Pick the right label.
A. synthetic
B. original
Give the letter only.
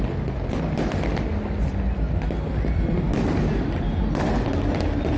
B